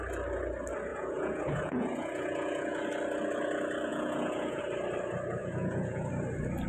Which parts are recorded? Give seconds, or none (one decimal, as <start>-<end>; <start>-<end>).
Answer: 0.0-0.9; 2.8-3.9; 4.6-5.4; 6.1-6.7